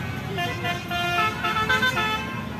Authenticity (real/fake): real